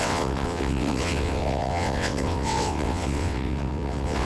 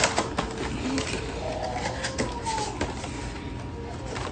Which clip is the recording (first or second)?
second